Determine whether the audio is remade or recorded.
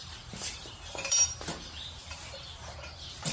remade